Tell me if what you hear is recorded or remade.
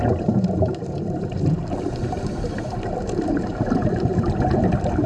remade